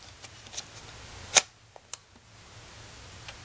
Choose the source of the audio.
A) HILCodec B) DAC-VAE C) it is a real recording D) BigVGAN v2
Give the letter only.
C